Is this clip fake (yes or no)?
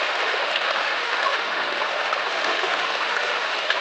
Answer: yes